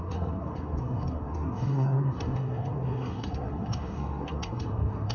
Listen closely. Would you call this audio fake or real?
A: fake